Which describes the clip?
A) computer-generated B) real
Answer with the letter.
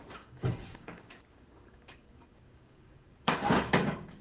A